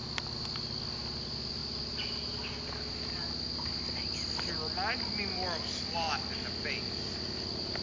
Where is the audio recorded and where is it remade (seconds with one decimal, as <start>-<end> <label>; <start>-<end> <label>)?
0.0-7.8 recorded